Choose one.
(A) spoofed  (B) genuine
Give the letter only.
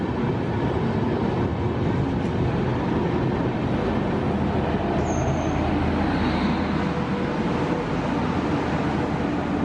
B